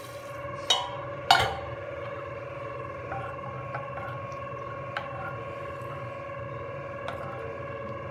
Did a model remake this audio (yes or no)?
no